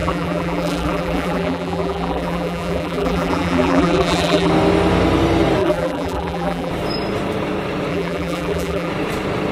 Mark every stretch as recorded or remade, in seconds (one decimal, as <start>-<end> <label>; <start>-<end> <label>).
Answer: 0.0-4.5 remade; 4.5-5.6 recorded; 5.6-6.7 remade; 6.7-7.9 recorded; 7.9-8.9 remade; 8.9-9.5 recorded